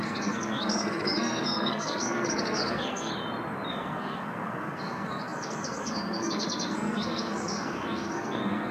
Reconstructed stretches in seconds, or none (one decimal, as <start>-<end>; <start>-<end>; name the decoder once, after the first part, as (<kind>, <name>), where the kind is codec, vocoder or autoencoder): 0.0-3.1 (codec, SNAC); 3.7-8.7